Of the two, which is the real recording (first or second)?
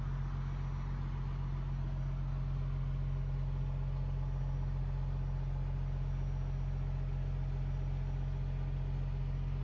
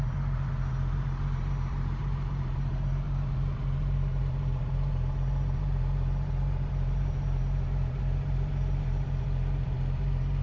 first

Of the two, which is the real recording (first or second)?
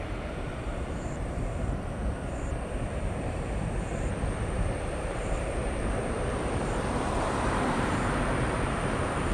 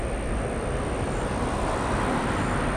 second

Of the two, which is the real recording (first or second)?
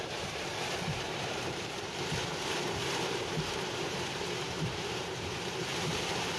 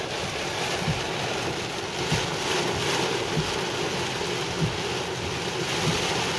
second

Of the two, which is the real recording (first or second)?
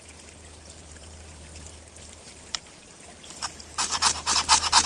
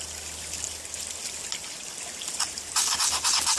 second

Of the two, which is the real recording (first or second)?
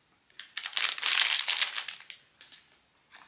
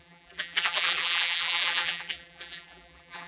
first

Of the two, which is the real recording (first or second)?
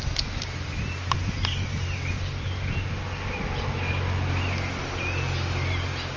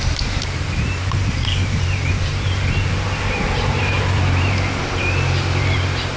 first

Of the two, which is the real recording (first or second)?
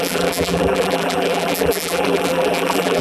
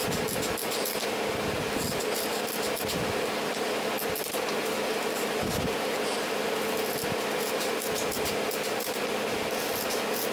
second